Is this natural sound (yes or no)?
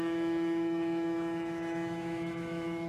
no